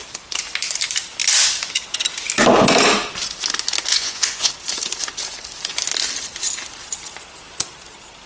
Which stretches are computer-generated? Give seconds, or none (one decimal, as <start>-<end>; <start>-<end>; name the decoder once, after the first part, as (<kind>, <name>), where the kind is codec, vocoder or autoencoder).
3.9-4.5 (vocoder, Vocos)